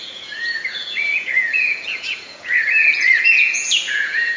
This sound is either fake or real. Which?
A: fake